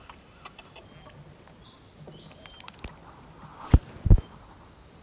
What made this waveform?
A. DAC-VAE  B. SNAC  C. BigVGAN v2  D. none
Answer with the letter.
D